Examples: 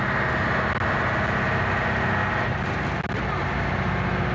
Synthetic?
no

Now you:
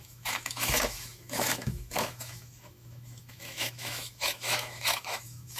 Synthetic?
yes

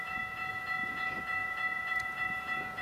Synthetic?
yes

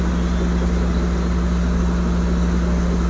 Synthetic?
no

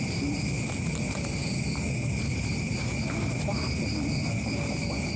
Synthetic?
no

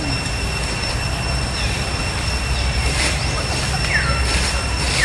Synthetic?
no